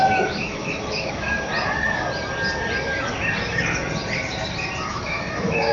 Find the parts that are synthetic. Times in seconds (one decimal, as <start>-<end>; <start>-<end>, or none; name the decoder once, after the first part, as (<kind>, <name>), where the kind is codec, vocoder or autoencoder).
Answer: 0.0-1.5 (autoencoder, DAC-VAE); 4.9-5.7